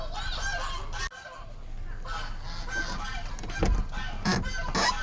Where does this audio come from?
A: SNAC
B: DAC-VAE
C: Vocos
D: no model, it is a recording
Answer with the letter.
D